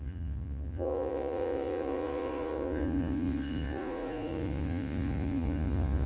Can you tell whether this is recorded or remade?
remade